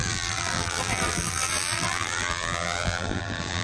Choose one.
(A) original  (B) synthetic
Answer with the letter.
B